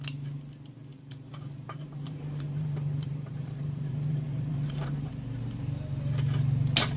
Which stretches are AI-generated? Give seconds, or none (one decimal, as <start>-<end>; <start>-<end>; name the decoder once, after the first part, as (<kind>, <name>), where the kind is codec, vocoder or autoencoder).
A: 0.9-5.1 (vocoder, BigVGAN v2)